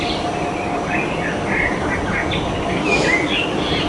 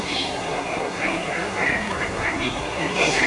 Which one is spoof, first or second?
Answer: second